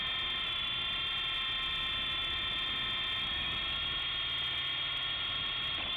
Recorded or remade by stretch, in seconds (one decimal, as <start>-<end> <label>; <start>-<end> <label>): 0.0-6.0 recorded